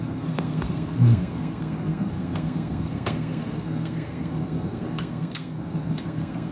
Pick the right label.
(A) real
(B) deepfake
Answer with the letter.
B